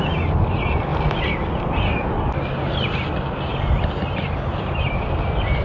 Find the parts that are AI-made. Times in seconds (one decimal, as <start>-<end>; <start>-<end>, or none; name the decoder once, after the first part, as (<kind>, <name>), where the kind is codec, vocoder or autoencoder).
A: 0.9-1.7 (vocoder, BigVGAN v2); 3.5-4.8